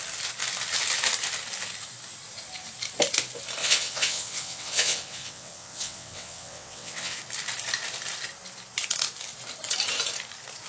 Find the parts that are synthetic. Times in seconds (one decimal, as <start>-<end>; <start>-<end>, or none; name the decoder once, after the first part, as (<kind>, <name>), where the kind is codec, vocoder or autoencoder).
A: 3.6-7.2 (vocoder, WaveNeXt)